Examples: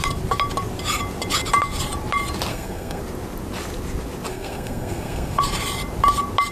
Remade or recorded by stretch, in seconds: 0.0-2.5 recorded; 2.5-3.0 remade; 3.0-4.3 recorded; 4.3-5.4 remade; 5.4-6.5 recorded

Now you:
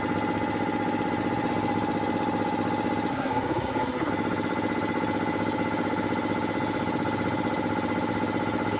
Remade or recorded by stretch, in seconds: 0.0-3.1 recorded; 3.1-4.1 remade; 4.1-8.8 recorded

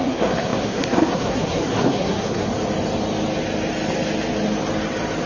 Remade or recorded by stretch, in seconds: 0.0-2.5 remade; 2.5-5.3 recorded

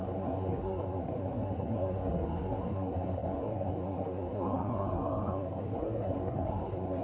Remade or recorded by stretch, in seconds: 0.0-7.0 remade

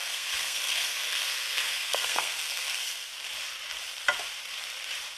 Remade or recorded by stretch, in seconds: 0.0-3.1 remade; 3.1-5.2 recorded

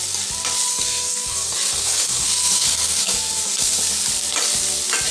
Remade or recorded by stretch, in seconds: 0.0-0.7 recorded; 0.7-3.8 remade; 3.8-5.1 recorded

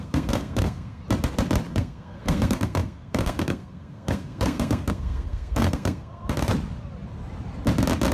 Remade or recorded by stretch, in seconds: 0.0-1.0 remade; 1.0-1.7 recorded; 1.7-6.5 remade; 6.5-8.1 recorded